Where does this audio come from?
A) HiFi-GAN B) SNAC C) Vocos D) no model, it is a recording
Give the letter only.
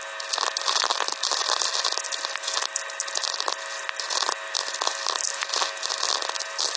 D